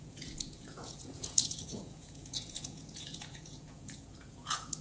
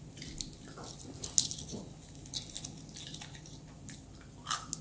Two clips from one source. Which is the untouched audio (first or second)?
second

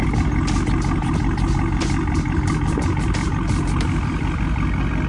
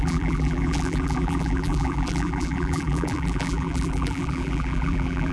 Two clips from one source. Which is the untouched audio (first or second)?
first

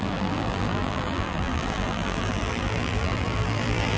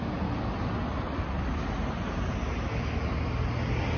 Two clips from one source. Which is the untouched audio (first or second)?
second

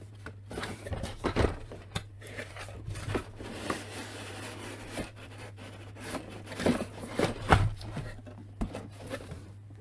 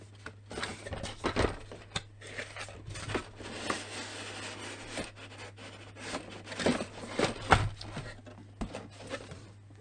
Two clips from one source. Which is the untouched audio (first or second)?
second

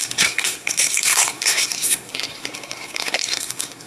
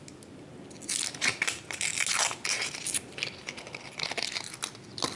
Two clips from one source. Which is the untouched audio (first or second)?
second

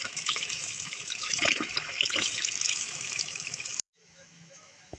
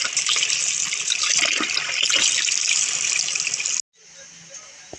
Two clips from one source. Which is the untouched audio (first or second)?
second